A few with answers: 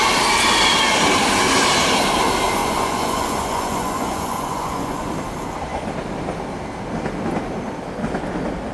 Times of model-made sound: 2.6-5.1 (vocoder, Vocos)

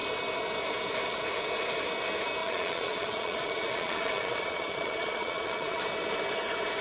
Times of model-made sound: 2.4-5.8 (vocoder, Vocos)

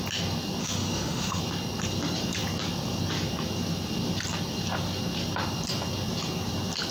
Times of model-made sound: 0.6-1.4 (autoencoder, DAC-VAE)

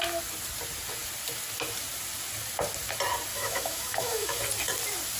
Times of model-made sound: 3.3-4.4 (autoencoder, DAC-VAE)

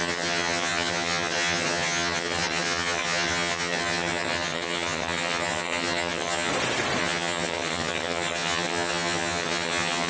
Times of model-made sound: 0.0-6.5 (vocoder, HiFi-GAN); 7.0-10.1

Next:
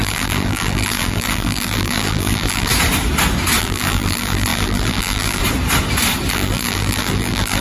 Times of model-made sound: 0.0-2.7 (vocoder, BigVGAN v2); 3.6-5.4; 6.3-7.6

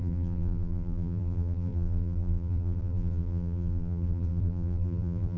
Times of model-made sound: 0.0-5.4 (vocoder, BigVGAN v2)

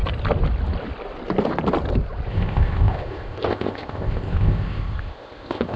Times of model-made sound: 2.3-5.8 (codec, ZipCodec)